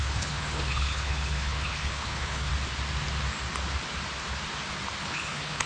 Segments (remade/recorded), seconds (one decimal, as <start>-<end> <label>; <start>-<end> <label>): 0.0-2.5 remade; 2.5-5.0 recorded; 5.0-5.7 remade